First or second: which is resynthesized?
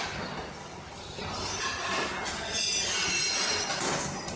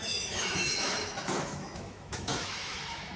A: second